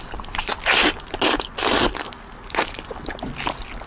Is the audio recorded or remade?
recorded